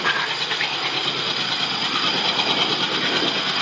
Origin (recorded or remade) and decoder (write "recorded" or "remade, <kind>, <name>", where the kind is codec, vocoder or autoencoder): recorded